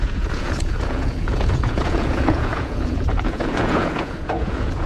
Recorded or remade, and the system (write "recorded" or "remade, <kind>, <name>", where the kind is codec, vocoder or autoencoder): remade, vocoder, Vocos